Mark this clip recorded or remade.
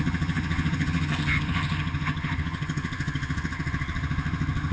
remade